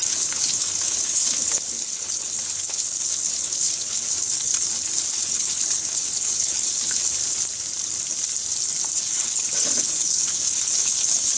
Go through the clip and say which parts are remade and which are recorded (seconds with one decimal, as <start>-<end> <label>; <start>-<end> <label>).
0.0-4.5 remade; 4.5-5.0 recorded; 5.0-7.2 remade; 7.2-9.0 recorded; 9.0-11.4 remade